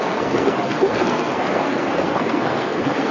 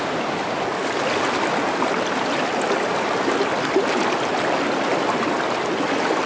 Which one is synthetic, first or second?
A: first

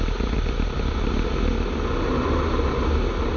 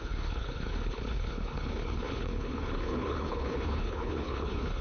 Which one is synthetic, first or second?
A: second